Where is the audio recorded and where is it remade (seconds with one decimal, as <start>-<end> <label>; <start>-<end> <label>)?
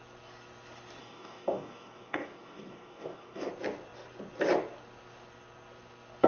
0.0-1.0 recorded; 1.0-3.5 remade; 3.5-6.3 recorded